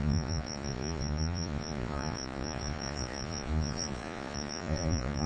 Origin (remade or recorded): remade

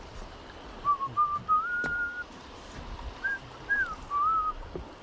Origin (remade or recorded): recorded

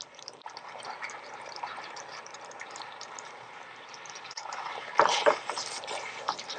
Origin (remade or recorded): remade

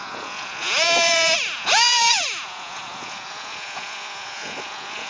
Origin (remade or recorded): remade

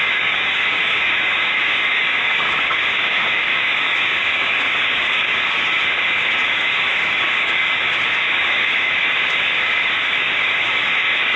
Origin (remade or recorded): remade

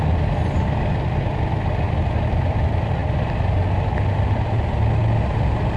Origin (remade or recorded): recorded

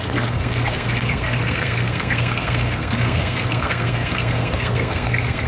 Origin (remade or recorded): remade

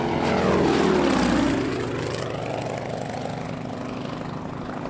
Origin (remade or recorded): recorded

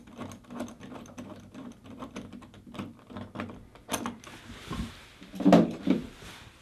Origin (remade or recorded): recorded